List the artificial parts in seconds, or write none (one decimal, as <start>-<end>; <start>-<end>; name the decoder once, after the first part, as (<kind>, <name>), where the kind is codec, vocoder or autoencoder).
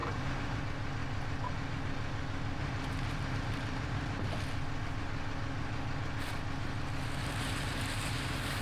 0.0-0.6 (vocoder, BigVGAN v2); 2.6-4.2; 7.2-8.6